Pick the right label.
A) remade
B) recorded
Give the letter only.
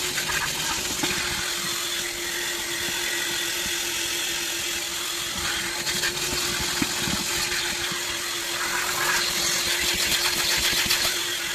B